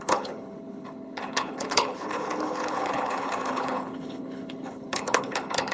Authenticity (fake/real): fake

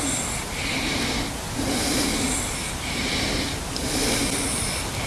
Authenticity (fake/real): real